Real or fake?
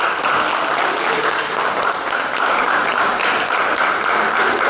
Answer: real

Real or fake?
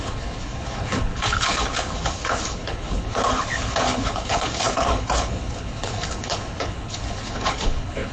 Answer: fake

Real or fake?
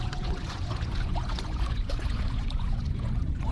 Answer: fake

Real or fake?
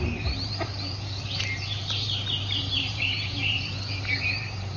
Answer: fake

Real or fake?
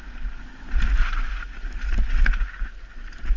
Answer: real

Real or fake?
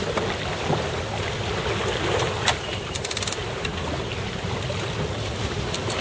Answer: real